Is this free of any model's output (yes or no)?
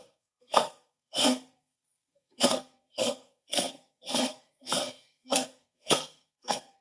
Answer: no